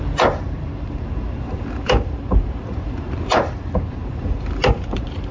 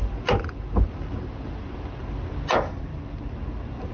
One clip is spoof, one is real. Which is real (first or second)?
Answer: second